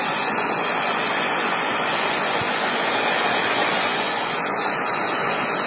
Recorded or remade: remade